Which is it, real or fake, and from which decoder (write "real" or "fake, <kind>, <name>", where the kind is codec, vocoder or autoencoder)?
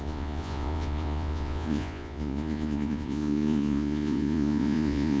fake, vocoder, Vocos